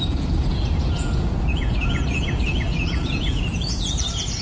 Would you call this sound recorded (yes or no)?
no